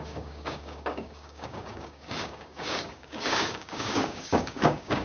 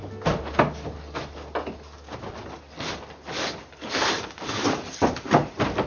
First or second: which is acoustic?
second